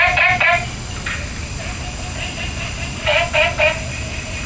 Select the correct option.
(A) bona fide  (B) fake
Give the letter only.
A